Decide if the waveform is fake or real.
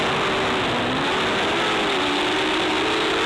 real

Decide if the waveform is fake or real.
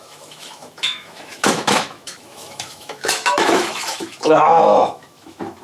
fake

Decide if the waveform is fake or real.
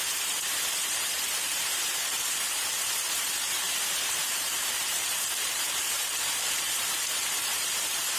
fake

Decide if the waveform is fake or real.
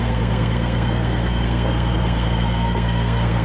fake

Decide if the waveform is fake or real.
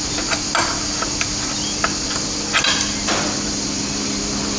real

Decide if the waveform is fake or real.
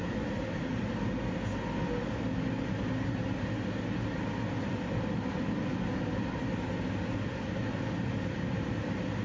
real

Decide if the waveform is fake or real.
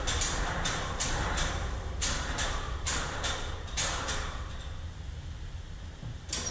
fake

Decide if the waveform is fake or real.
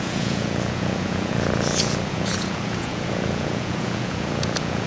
fake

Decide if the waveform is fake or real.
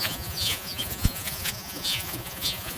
fake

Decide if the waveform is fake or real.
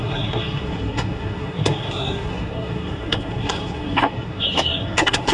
fake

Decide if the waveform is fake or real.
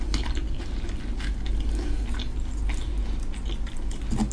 real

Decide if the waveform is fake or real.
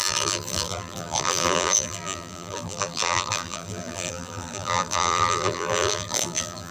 fake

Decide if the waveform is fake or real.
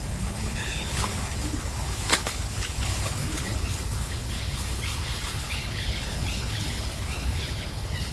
fake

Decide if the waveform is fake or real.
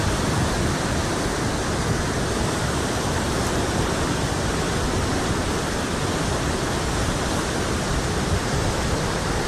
real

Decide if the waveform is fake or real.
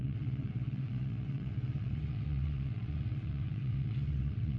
fake